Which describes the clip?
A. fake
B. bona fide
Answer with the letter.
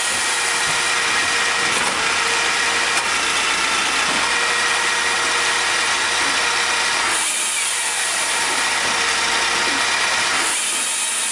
B